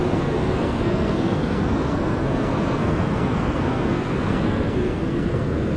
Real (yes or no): no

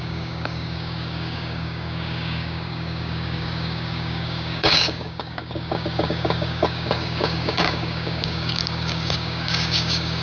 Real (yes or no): no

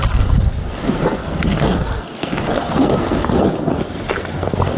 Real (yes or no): no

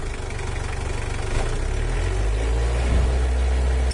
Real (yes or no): yes